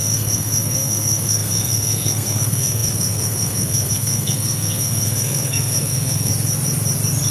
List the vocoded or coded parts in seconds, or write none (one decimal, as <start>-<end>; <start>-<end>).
0.0-6.3